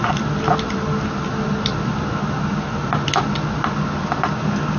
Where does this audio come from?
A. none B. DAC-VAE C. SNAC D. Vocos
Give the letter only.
A